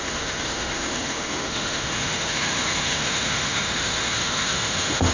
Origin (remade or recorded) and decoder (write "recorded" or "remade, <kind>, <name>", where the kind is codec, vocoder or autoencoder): remade, autoencoder, DAC-VAE